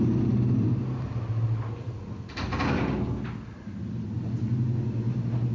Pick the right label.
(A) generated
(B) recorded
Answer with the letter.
B